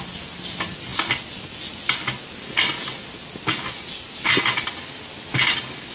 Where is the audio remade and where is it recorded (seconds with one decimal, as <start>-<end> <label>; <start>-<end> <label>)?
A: 0.0-5.9 recorded